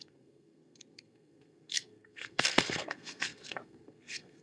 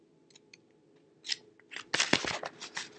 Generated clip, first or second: first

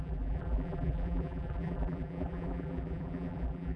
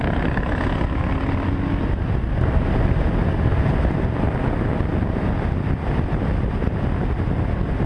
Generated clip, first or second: first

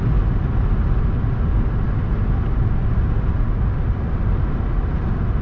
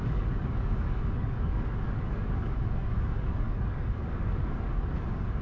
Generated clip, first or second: second